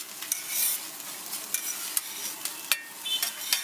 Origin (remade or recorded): recorded